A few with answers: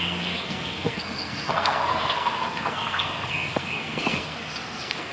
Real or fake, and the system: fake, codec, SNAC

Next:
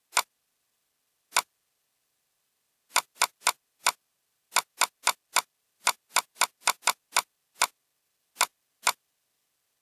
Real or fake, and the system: real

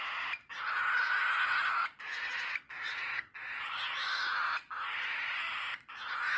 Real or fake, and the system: real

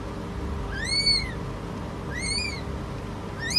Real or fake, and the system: real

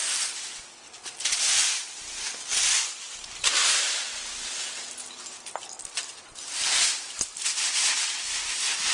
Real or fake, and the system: real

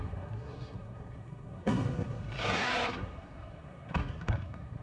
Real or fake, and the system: fake, codec, SNAC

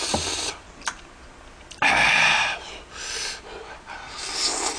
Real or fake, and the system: real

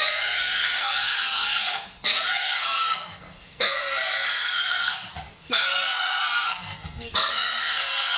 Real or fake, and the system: fake, codec, SNAC